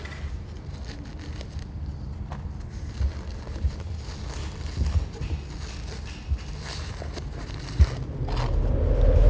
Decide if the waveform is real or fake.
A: real